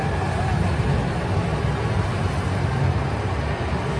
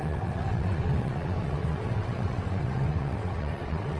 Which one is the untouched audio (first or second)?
first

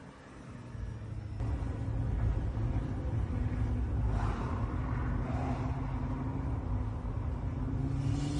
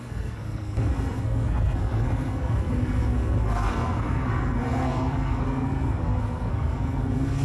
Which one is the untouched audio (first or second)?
first